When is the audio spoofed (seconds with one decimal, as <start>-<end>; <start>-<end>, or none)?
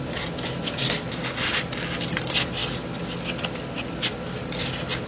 none